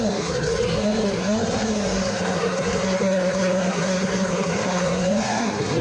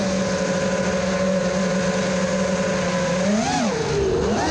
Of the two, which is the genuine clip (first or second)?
second